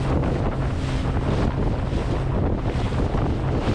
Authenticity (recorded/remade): recorded